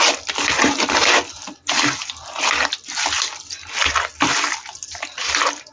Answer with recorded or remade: recorded